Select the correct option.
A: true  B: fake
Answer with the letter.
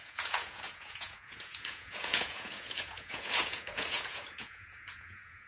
B